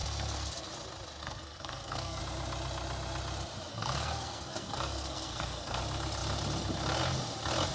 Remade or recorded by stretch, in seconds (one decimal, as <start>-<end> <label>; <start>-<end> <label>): 0.0-0.7 remade; 0.7-1.2 recorded; 1.2-2.2 remade; 2.2-3.7 recorded; 3.7-5.8 remade; 5.8-7.7 recorded